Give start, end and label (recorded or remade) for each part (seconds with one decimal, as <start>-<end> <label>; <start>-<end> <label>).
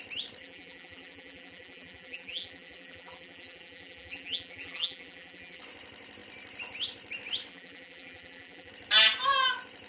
0.0-0.4 recorded; 0.4-5.6 remade; 5.6-7.5 recorded; 7.5-8.7 remade; 8.7-9.9 recorded